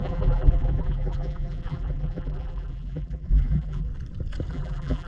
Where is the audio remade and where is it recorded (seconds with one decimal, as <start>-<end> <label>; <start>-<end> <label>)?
0.0-3.9 remade; 3.9-4.5 recorded; 4.5-5.1 remade